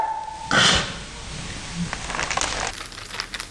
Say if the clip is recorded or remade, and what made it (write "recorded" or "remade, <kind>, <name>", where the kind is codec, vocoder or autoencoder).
recorded